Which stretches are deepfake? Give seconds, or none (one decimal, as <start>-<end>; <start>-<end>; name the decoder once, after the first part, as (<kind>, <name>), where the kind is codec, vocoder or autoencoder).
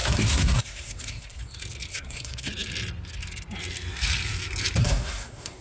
0.0-1.4 (codec, SNAC); 1.9-2.5; 4.8-5.6